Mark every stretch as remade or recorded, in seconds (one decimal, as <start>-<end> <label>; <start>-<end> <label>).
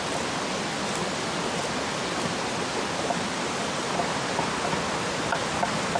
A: 0.0-6.0 recorded